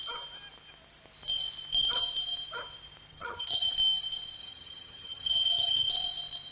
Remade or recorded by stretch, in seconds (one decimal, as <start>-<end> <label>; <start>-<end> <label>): 0.0-3.1 recorded; 3.1-3.7 remade; 3.7-4.4 recorded; 4.4-5.9 remade; 5.9-6.5 recorded